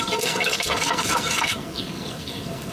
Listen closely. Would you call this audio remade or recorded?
remade